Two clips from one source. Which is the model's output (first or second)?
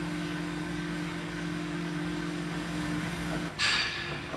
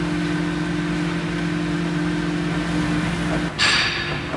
first